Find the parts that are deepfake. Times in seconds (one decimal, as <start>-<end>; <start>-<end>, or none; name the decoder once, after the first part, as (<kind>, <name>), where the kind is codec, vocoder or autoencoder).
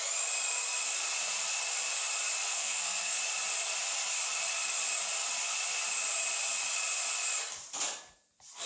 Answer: 2.5-3.2 (codec, SNAC)